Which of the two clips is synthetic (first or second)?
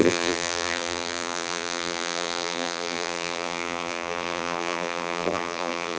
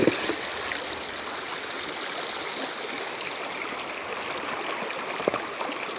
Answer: first